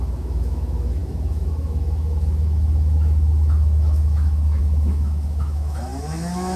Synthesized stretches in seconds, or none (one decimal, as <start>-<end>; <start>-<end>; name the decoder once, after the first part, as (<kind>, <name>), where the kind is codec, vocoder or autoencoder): 0.0-6.6 (autoencoder, DAC-VAE)